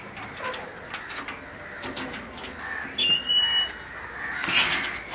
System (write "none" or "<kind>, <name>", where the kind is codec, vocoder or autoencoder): none